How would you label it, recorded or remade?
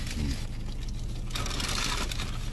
recorded